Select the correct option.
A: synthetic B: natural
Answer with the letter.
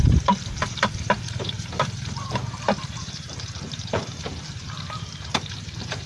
A